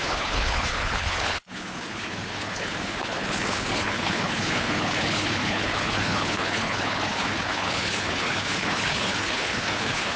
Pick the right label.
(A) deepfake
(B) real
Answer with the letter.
A